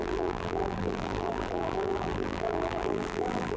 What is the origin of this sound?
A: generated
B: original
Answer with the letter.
A